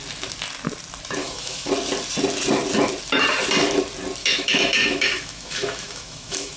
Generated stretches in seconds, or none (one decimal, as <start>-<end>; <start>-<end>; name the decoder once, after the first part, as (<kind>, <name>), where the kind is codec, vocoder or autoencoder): 1.2-1.7 (autoencoder, DAC-VAE); 4.2-6.6